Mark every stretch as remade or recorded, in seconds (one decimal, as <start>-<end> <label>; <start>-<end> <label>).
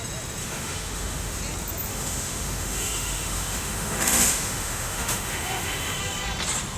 0.0-0.4 recorded; 0.4-1.4 remade; 1.4-1.9 recorded; 1.9-6.0 remade; 6.0-6.8 recorded